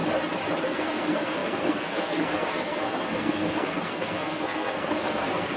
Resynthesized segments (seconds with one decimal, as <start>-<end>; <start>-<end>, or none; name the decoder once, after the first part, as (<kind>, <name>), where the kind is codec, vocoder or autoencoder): 0.6-5.6 (codec, SNAC)